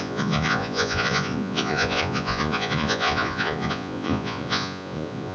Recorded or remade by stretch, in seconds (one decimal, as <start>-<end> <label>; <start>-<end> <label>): 0.0-5.3 remade